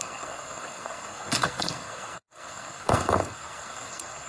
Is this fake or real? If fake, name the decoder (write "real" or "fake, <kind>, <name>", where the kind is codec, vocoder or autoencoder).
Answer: fake, codec, SNAC